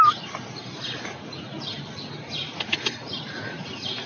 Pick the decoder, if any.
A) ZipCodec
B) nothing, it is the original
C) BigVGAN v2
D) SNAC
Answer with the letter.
B